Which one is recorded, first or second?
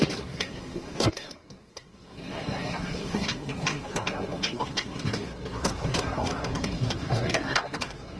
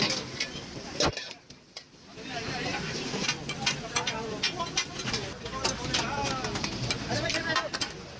second